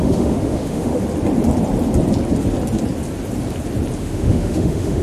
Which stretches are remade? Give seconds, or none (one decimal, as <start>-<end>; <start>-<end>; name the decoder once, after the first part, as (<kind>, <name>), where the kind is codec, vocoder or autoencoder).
0.0-1.0 (autoencoder, DAC-VAE); 4.0-5.0